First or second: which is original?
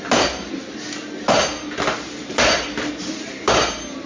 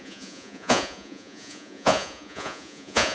first